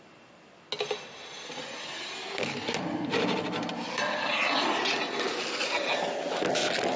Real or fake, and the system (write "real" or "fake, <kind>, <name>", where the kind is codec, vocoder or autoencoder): real